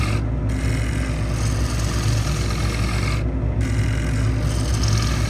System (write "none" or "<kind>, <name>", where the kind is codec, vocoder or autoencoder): none